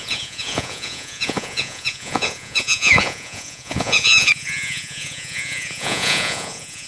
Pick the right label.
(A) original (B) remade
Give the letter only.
B